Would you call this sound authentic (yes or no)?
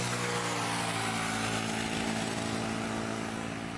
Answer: yes